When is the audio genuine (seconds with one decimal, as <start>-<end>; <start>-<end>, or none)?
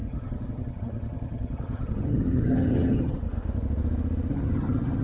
3.2-4.3